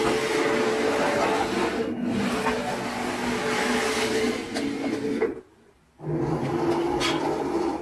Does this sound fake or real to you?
real